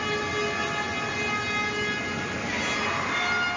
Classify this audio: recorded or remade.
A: recorded